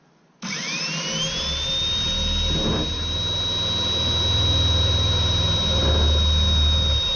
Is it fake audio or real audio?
real